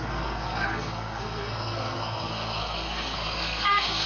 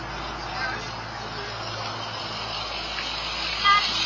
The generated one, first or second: first